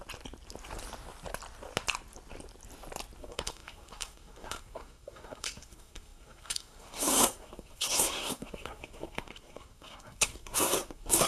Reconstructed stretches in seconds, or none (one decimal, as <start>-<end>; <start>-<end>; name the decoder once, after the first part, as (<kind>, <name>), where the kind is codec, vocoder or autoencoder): 3.2-11.3 (codec, SNAC)